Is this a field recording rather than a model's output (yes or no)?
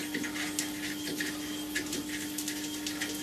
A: yes